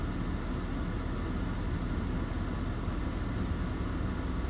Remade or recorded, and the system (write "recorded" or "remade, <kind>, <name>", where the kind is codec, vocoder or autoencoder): recorded